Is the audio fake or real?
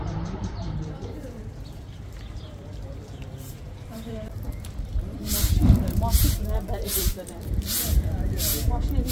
fake